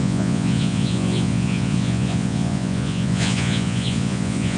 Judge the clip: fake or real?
fake